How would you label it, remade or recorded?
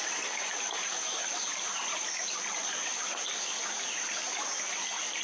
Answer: recorded